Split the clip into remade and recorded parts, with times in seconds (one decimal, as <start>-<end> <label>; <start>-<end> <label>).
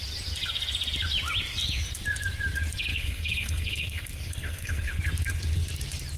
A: 0.0-2.9 recorded; 2.9-5.0 remade; 5.0-6.2 recorded